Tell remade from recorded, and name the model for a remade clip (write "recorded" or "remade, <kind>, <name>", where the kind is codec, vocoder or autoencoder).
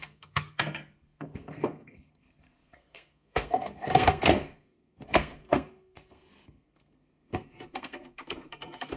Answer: remade, codec, SNAC